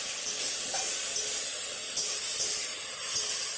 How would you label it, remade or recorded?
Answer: recorded